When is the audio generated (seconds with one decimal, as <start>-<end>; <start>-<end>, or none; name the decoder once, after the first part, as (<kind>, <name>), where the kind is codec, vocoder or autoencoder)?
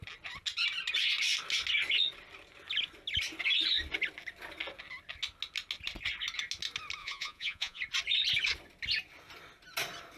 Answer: 7.0-7.8 (vocoder, Vocos)